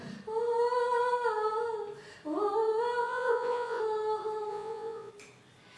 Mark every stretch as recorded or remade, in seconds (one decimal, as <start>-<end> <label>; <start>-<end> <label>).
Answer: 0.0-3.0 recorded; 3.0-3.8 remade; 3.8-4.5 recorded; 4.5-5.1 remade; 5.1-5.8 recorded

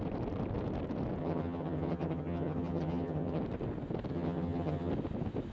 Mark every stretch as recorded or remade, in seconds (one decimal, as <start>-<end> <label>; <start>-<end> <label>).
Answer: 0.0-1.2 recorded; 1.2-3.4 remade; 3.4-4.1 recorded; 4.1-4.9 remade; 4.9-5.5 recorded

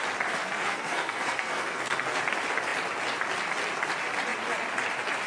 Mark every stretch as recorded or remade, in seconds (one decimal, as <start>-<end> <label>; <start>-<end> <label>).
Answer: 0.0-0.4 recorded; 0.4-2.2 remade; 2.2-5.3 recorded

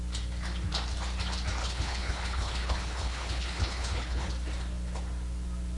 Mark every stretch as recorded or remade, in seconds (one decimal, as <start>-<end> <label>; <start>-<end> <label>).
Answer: 0.0-1.6 recorded; 1.6-4.3 remade; 4.3-5.8 recorded

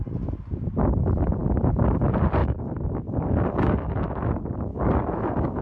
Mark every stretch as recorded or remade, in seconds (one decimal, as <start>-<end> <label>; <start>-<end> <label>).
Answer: 0.0-2.4 recorded; 2.4-4.1 remade; 4.1-4.7 recorded; 4.7-5.6 remade